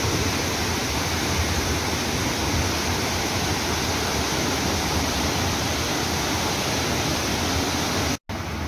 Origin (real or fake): real